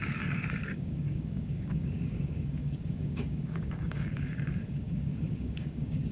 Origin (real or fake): fake